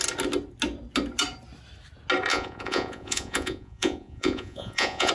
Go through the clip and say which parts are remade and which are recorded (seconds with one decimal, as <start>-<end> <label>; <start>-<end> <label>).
0.0-2.3 recorded; 2.3-5.1 remade